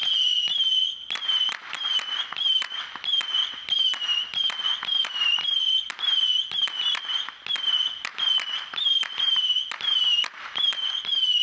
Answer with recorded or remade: recorded